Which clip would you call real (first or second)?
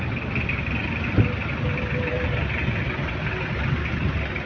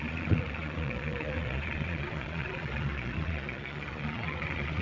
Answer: first